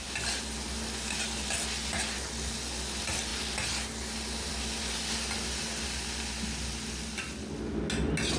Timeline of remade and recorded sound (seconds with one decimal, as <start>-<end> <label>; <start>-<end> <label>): 0.0-8.4 recorded